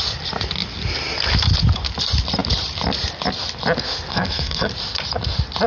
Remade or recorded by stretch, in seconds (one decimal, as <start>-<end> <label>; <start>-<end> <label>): 0.0-4.1 recorded; 4.1-4.7 remade; 4.7-5.7 recorded